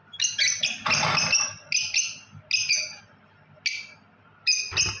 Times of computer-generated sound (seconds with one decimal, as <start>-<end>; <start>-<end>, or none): none